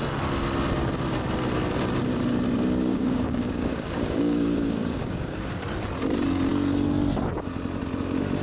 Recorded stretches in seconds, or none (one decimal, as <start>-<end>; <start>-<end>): 0.0-2.9; 5.6-8.4